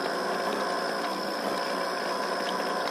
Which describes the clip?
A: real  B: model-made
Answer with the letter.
A